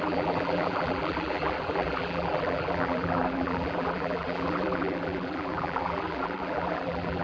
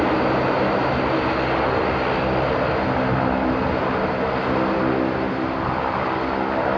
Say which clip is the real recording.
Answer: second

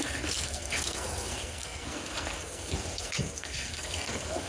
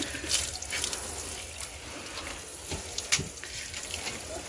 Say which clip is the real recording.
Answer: second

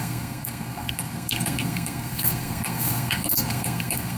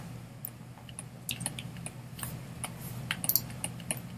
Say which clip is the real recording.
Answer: second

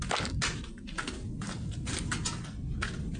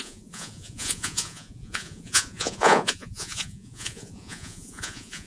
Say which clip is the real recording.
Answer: first